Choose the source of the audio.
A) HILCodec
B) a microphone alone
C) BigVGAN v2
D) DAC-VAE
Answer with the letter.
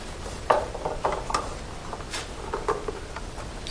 B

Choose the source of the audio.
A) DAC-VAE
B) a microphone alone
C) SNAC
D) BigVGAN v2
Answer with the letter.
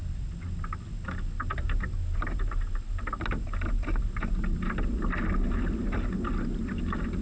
B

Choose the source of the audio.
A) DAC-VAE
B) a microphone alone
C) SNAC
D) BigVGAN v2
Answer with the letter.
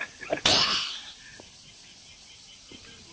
B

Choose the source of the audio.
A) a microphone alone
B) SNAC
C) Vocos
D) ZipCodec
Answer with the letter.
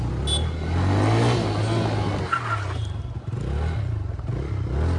A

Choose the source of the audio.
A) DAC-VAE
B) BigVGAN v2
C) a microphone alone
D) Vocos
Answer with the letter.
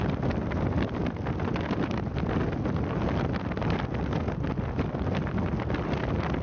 C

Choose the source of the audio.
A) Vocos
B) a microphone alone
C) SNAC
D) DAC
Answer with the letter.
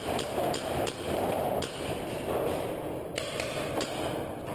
B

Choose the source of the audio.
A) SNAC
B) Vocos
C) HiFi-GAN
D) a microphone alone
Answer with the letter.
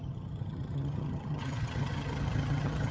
C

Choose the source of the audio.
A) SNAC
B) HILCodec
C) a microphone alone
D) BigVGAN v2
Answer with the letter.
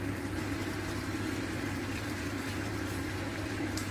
D